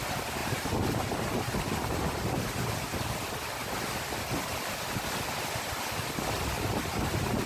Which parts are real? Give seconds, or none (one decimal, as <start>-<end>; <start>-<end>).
0.0-7.5